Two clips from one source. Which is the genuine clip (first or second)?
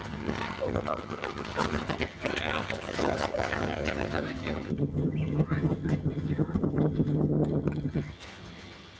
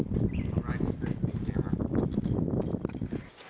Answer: second